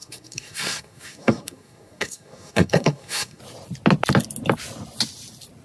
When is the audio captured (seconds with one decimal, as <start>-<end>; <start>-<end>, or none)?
3.4-5.6